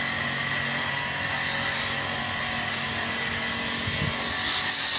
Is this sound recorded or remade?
recorded